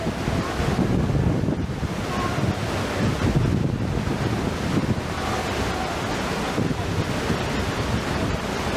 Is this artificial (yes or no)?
no